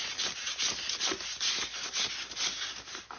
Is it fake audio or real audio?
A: real